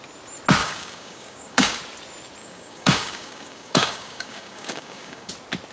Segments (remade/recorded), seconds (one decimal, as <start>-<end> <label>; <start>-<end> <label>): 0.0-0.6 recorded; 0.6-1.8 remade; 1.8-2.4 recorded; 2.4-5.3 remade; 5.3-5.7 recorded